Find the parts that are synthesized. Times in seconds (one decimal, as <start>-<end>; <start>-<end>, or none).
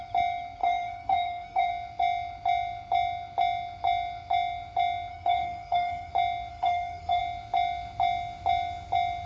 0.6-1.7; 5.1-6.1; 6.5-7.2